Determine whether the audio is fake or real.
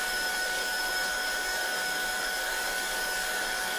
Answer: fake